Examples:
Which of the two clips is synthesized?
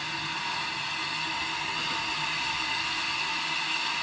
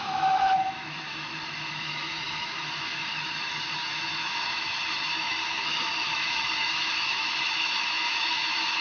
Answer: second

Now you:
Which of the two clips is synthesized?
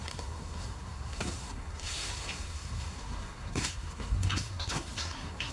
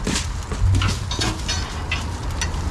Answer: first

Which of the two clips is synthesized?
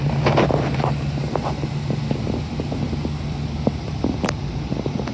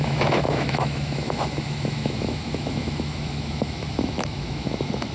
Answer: second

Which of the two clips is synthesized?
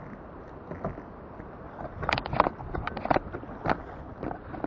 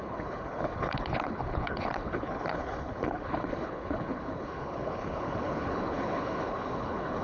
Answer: second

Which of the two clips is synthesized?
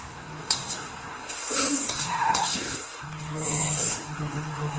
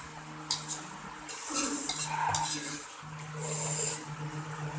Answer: first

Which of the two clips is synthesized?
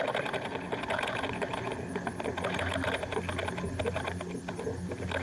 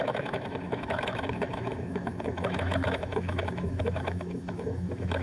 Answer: second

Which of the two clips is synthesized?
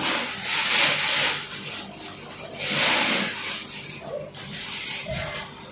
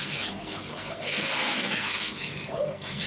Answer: second